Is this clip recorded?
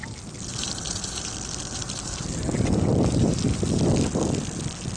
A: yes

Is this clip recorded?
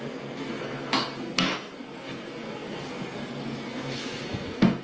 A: no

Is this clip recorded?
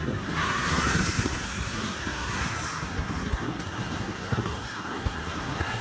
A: no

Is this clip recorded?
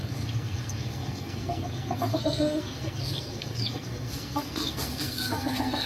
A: no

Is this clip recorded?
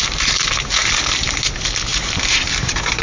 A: yes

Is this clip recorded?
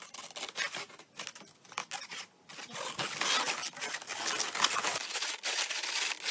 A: yes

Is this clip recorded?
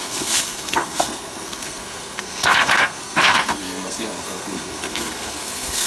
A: no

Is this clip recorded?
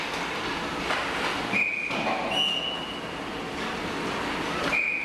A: yes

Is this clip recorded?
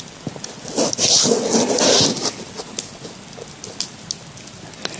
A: yes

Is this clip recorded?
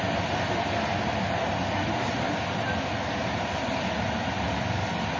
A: yes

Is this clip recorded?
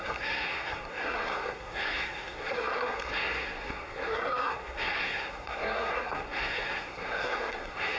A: no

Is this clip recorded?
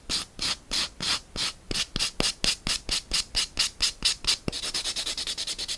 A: yes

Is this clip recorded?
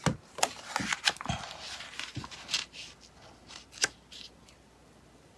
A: yes